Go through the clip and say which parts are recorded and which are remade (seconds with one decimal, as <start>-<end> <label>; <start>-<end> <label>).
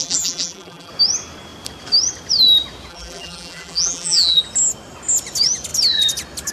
0.0-0.9 remade; 0.9-2.9 recorded; 2.9-4.4 remade; 4.4-6.5 recorded